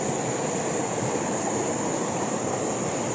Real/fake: real